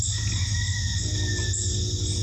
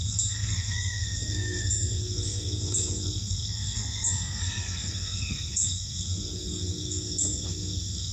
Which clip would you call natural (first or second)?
first